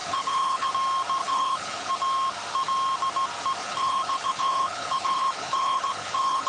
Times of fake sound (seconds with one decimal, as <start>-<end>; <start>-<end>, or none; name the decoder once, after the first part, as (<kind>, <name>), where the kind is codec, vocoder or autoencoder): 0.0-0.7 (codec, HILCodec); 1.2-1.9; 3.6-6.5